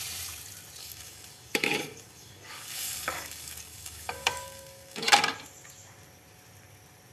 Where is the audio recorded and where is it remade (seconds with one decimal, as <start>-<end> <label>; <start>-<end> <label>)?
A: 0.0-0.8 recorded; 0.8-5.1 remade; 5.1-7.1 recorded